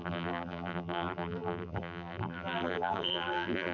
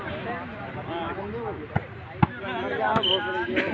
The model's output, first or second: first